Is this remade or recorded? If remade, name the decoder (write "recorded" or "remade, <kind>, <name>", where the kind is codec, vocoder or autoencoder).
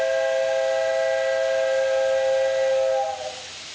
recorded